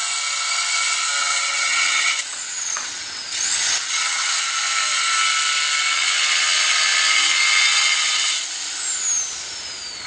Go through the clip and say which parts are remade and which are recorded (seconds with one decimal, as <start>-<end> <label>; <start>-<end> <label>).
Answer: 0.0-1.2 recorded; 1.2-4.4 remade; 4.4-10.1 recorded

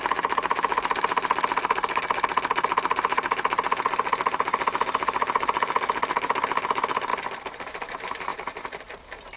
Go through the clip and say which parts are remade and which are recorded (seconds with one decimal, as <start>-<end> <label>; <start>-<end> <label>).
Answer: 0.0-8.3 recorded; 8.3-9.0 remade; 9.0-9.4 recorded

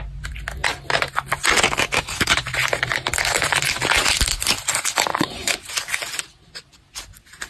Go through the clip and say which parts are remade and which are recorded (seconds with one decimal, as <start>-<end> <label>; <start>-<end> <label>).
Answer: 0.0-5.1 recorded; 5.1-5.7 remade; 5.7-7.5 recorded

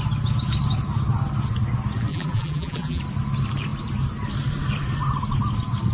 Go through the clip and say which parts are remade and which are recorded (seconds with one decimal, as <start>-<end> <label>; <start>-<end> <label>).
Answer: 0.0-2.1 recorded; 2.1-3.0 remade; 3.0-5.9 recorded

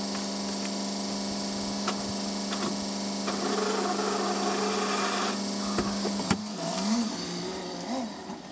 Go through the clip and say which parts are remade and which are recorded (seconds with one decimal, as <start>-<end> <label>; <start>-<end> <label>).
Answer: 0.0-6.4 recorded; 6.4-7.1 remade; 7.1-8.5 recorded

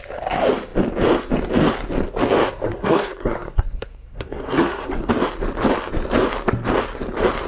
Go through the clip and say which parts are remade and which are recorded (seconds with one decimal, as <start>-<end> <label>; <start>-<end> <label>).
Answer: 0.0-2.4 recorded; 2.4-5.1 remade; 5.1-7.5 recorded

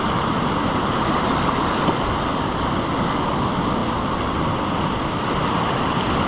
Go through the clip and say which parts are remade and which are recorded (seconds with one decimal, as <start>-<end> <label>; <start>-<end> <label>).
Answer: 0.0-6.3 recorded